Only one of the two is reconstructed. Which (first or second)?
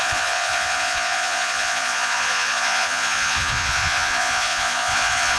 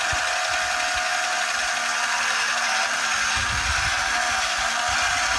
first